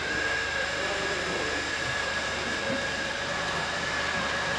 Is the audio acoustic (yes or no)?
no